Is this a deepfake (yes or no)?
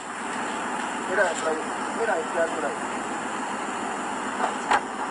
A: no